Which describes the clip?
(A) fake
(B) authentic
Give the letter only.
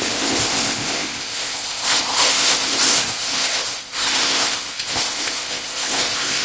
A